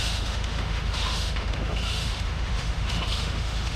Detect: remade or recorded remade